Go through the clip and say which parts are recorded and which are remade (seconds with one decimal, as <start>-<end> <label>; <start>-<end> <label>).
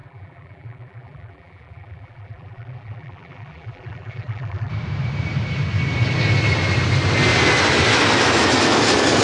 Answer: 0.0-4.7 remade; 4.7-9.2 recorded